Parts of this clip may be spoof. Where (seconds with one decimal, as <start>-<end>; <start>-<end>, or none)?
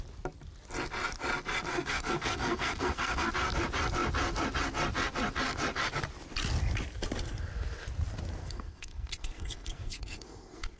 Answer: 1.7-3.3; 8.4-10.8